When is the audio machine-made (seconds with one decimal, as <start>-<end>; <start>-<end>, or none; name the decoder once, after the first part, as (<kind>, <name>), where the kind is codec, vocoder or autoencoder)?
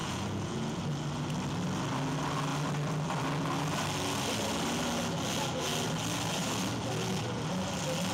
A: 0.0-0.8 (vocoder, Vocos)